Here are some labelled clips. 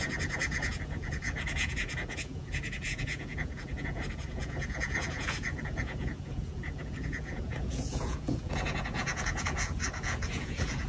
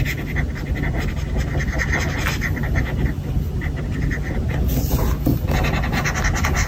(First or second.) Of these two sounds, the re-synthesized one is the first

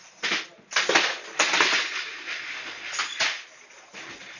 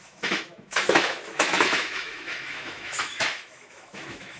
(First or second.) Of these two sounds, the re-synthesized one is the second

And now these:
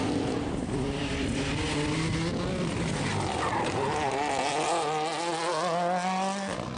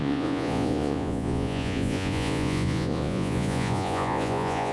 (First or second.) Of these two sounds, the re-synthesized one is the second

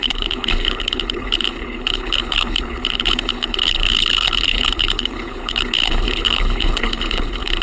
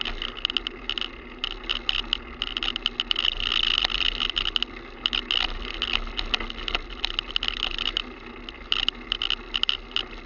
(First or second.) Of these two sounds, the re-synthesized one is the first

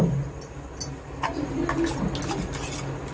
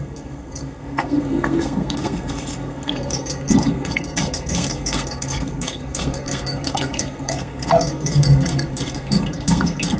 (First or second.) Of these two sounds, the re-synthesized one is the second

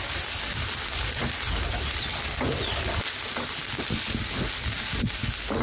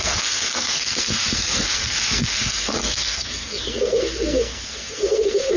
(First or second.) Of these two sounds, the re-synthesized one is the second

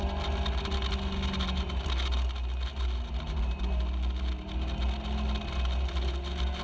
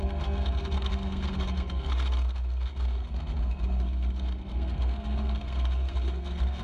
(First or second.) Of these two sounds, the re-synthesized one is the second